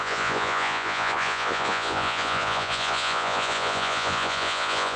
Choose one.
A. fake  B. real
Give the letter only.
A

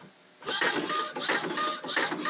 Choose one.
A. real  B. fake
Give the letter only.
A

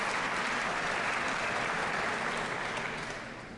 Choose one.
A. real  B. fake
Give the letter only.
A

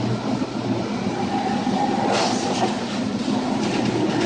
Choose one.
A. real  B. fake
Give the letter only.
A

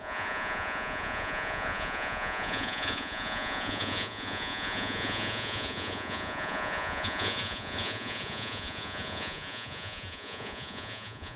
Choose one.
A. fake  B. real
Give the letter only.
A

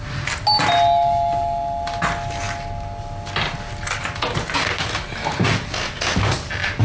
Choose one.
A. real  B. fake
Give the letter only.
A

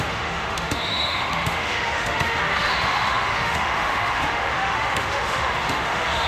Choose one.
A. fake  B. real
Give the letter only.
A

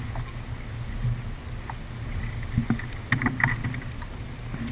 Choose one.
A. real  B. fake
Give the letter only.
A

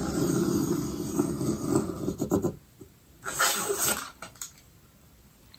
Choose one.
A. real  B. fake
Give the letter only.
A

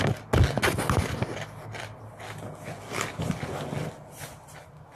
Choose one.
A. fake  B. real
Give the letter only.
B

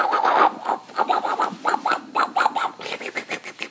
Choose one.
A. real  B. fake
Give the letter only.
A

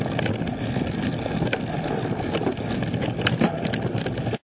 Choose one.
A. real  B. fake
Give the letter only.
A